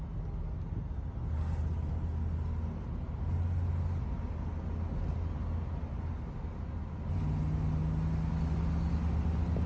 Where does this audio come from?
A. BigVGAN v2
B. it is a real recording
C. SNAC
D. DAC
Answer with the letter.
B